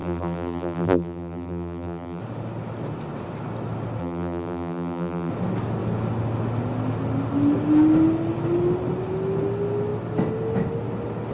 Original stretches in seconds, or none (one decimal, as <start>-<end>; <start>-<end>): 2.2-4.0; 5.3-11.3